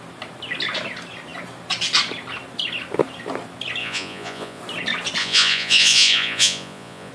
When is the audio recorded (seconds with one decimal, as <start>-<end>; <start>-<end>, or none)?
0.0-3.8; 4.6-5.2